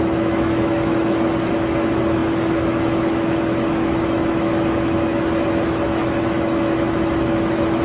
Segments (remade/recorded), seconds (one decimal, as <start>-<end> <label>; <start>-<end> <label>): 0.0-7.8 remade